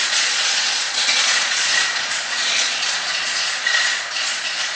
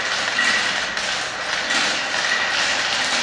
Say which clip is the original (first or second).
second